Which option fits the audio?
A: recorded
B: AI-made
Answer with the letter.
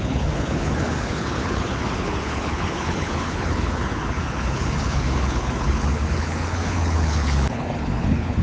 B